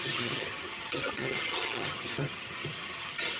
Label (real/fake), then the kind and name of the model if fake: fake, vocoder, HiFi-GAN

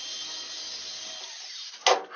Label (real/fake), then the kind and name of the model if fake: real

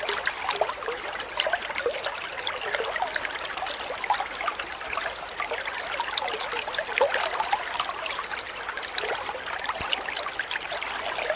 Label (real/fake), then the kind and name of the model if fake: real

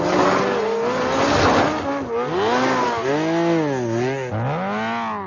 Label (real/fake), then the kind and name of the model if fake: real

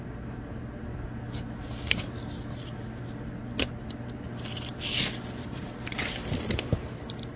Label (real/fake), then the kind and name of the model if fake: real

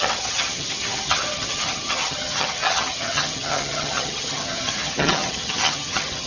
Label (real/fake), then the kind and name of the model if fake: fake, vocoder, HiFi-GAN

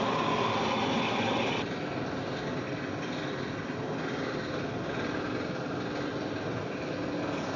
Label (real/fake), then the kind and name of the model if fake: real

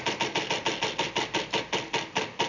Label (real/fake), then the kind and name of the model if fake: real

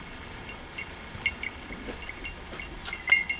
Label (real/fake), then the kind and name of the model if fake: real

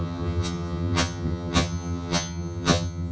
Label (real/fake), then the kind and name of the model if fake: fake, vocoder, HiFi-GAN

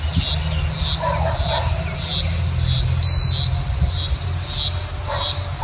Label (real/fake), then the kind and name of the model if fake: real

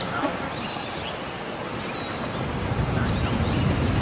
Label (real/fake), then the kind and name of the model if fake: real